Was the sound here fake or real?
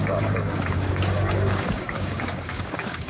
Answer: fake